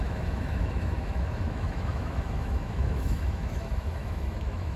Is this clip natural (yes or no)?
no